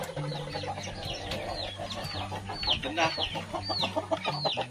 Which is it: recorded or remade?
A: recorded